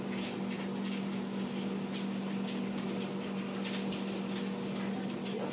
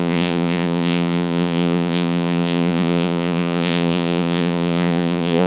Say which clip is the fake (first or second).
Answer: second